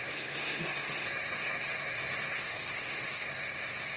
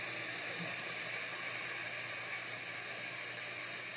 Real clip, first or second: second